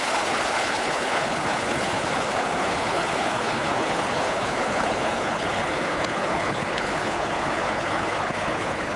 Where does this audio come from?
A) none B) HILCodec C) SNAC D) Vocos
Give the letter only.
B